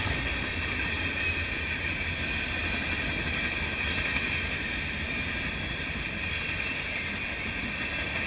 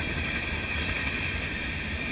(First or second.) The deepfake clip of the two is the second